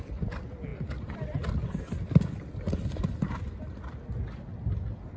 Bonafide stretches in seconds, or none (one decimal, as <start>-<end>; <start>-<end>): 0.0-5.2